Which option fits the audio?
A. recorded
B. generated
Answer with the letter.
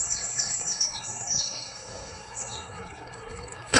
B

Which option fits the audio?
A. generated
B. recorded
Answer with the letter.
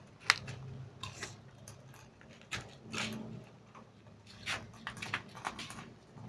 B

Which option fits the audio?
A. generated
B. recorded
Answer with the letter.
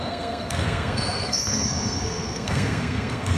A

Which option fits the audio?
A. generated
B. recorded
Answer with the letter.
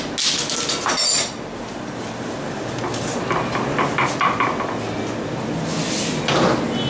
B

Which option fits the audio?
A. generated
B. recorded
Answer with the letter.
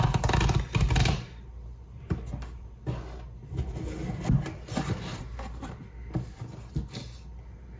B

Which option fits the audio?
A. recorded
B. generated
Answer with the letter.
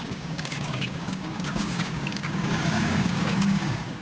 B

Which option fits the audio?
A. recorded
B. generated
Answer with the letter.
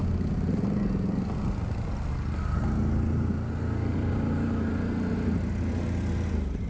A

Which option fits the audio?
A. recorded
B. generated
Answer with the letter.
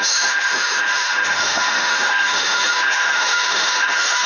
B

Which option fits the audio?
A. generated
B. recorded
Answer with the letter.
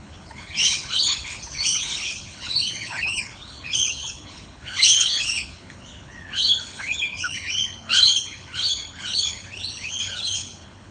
A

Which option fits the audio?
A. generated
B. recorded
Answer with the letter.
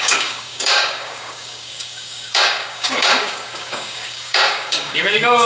A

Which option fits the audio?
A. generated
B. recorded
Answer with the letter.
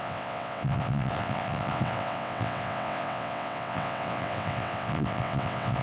A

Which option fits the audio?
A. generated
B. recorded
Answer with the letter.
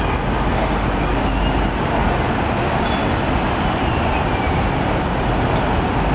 B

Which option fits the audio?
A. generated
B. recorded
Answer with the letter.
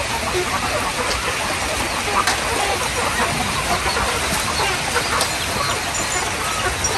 B